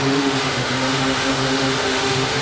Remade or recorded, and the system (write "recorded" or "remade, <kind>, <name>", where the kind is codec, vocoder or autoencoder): remade, autoencoder, DAC-VAE